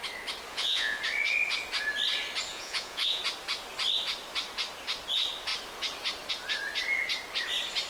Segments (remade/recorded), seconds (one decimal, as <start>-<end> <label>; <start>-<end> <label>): 0.0-0.5 recorded; 0.5-1.0 remade; 1.0-2.5 recorded; 2.5-3.2 remade; 3.2-7.9 recorded